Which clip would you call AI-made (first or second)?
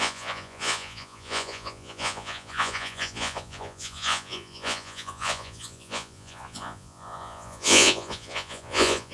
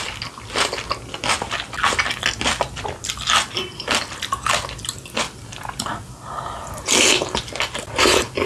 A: first